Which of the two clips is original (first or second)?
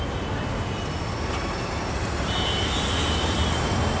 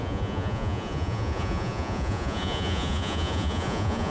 first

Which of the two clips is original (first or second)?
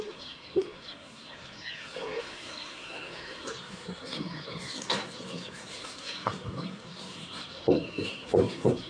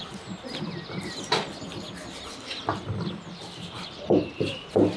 second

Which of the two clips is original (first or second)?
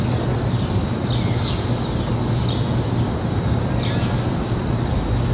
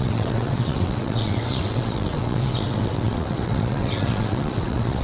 first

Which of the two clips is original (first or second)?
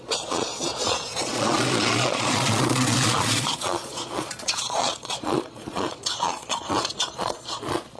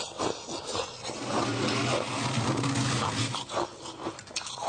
second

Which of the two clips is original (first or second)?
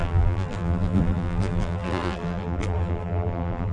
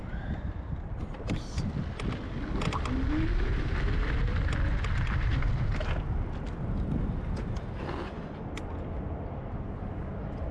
second